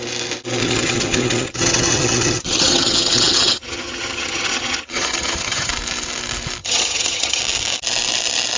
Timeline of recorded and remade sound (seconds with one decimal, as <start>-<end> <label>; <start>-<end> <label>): 0.0-0.6 recorded; 0.6-5.7 remade; 5.7-6.6 recorded; 6.6-7.4 remade; 7.4-8.6 recorded